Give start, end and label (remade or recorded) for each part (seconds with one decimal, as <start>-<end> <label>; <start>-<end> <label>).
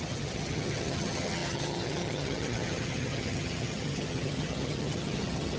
0.0-5.6 remade